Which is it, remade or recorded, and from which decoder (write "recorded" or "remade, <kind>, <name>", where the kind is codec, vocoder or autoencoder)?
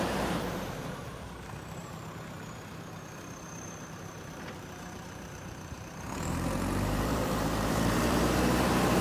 remade, vocoder, BigVGAN v2